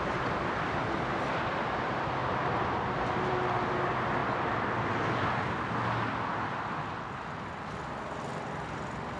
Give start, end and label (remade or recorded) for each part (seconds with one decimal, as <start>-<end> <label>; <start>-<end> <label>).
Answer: 0.0-9.2 recorded